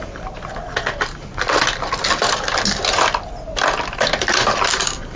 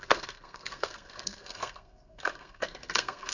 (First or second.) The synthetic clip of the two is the second